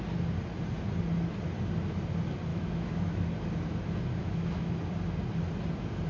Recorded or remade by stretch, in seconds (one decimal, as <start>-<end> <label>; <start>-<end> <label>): 0.0-2.5 recorded; 2.5-3.2 remade; 3.2-4.2 recorded; 4.2-4.8 remade; 4.8-6.1 recorded